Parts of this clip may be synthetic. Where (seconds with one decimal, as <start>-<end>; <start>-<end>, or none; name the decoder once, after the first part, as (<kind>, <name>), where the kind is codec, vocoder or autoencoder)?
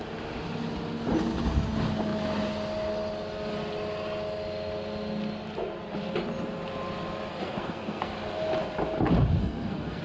7.3-8.1 (codec, SNAC); 9.4-10.0